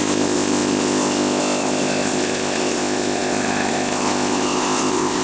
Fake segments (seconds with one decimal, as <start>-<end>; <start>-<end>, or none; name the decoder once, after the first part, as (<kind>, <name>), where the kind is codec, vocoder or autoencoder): 0.0-5.2 (codec, ZipCodec)

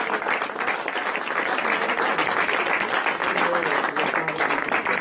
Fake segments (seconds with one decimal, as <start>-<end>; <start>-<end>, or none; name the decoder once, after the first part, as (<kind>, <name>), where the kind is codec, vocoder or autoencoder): none

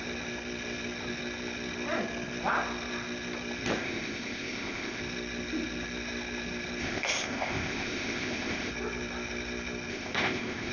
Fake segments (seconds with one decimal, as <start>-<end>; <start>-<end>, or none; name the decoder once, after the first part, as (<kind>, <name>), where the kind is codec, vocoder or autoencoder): 3.8-5.0 (codec, ZipCodec); 6.8-8.7; 9.9-10.7

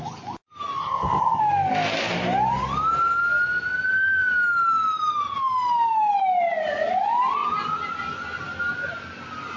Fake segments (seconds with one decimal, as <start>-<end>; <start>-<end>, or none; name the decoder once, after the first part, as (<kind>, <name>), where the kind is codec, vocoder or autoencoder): 0.8-1.4 (codec, ZipCodec)

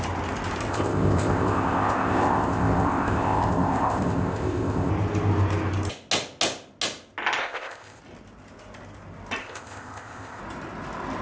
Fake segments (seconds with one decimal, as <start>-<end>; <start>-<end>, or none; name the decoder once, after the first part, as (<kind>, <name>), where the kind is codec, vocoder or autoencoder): 0.7-4.9 (codec, ZipCodec); 7.4-8.0; 9.4-10.4

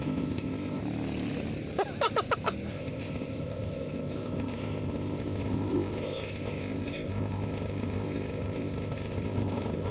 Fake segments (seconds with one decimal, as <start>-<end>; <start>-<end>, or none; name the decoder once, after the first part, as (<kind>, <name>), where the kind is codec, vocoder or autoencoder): 0.0-0.8 (codec, ZipCodec); 2.7-9.9

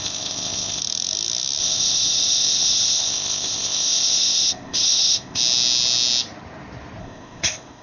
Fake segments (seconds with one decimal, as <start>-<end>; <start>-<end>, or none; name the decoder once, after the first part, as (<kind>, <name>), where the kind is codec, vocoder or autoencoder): 0.0-0.8 (codec, ZipCodec); 1.6-5.4; 7.0-7.8

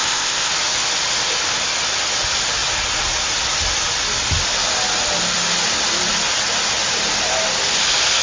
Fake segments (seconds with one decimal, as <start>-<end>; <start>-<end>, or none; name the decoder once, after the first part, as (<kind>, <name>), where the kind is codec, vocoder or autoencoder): 0.0-0.5 (codec, ZipCodec)